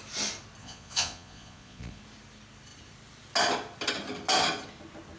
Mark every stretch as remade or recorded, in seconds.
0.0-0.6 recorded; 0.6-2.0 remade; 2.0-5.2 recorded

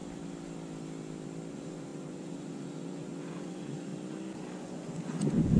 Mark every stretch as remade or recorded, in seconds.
0.0-1.5 recorded; 1.5-3.9 remade; 3.9-4.6 recorded; 4.6-5.6 remade

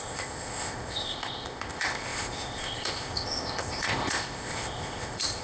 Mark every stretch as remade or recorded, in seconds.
0.0-5.4 remade

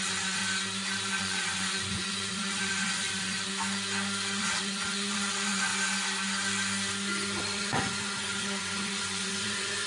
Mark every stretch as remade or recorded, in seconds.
0.0-0.4 remade; 0.4-1.2 recorded; 1.2-3.5 remade; 3.5-4.4 recorded; 4.4-5.7 remade; 5.7-7.4 recorded; 7.4-9.9 remade

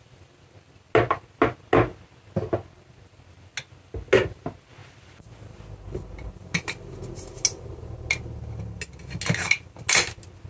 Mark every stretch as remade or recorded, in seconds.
0.0-10.5 recorded

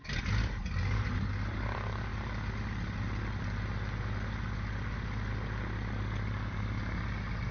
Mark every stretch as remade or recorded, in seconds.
0.0-7.5 recorded

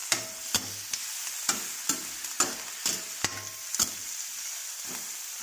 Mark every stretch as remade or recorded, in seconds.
0.0-5.4 recorded

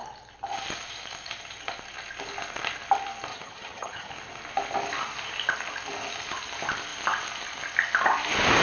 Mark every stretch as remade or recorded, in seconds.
0.0-3.3 recorded; 3.3-4.1 remade; 4.1-8.6 recorded